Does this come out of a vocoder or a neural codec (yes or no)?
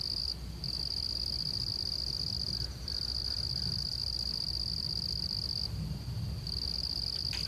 yes